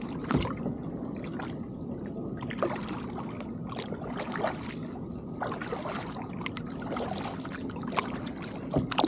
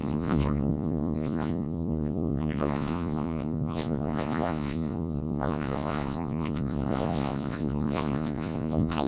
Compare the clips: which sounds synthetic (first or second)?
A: second